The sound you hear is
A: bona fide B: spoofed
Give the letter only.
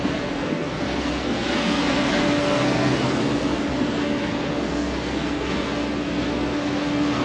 B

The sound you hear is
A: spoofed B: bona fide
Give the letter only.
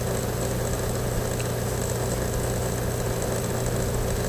B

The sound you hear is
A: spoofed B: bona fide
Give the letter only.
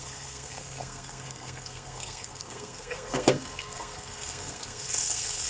A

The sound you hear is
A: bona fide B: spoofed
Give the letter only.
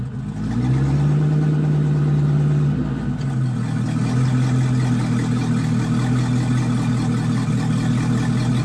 A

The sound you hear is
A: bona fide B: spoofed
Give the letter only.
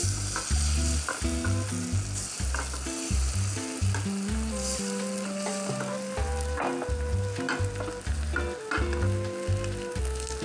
A